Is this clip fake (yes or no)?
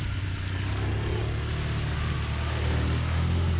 no